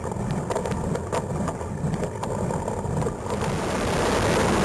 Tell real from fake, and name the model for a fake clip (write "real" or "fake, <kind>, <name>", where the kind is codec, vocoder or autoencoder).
real